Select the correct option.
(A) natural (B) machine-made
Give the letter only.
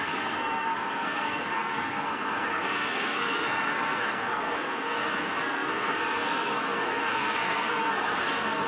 B